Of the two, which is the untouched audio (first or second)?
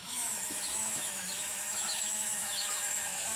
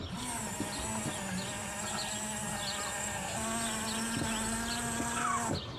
second